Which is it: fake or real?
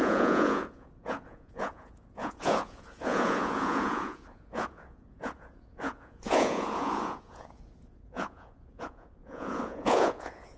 fake